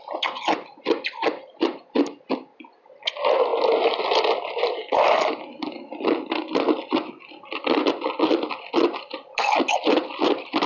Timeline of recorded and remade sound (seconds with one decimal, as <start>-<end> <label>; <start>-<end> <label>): 0.0-10.7 recorded

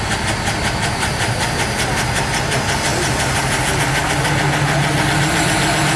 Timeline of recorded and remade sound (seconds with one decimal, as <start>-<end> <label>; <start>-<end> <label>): 0.0-6.0 recorded

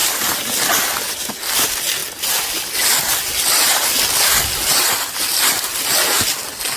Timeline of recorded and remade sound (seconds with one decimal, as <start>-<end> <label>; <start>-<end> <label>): 0.0-6.8 recorded